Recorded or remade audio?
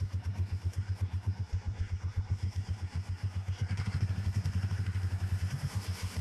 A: remade